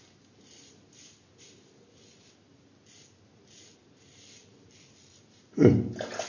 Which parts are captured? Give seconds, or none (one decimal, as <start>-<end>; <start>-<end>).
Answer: 0.0-6.3